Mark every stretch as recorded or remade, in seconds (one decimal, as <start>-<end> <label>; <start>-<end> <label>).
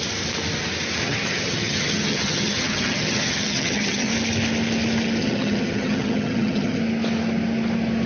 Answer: 0.0-1.0 recorded; 1.0-4.1 remade; 4.1-5.2 recorded; 5.2-6.8 remade; 6.8-8.1 recorded